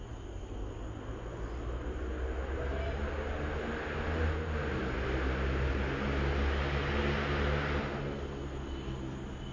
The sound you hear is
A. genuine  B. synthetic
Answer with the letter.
A